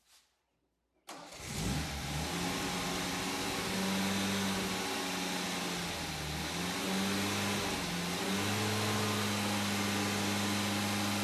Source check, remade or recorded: recorded